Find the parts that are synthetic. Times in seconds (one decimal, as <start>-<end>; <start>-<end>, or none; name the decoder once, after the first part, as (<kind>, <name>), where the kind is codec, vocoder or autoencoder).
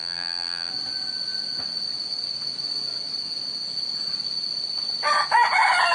0.0-0.7 (vocoder, BigVGAN v2)